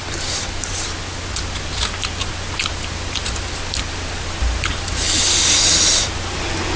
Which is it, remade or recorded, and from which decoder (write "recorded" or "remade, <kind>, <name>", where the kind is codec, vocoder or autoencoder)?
recorded